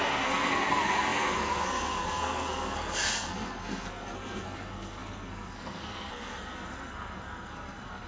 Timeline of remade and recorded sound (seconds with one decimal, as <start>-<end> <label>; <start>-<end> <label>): 0.0-8.1 remade